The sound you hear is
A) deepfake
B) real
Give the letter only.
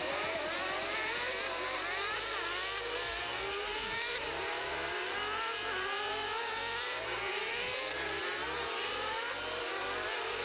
A